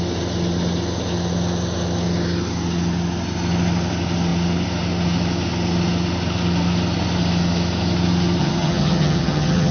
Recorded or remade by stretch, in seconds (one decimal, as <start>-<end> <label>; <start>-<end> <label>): 0.0-8.4 recorded; 8.4-9.7 remade